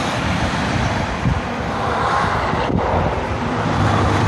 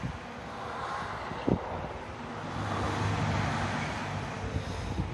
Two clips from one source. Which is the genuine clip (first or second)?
second